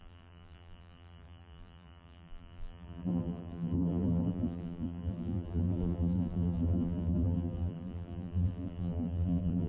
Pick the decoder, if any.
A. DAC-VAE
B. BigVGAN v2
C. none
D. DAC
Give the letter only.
B